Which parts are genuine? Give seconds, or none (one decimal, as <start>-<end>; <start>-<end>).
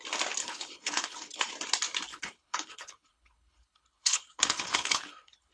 0.0-0.4; 1.5-2.1